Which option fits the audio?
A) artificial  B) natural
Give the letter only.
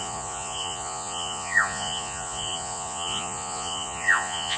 A